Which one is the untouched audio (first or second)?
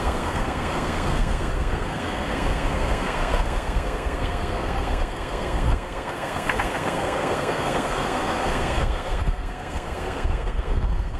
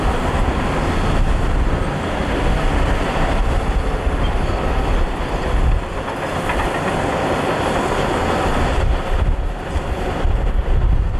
second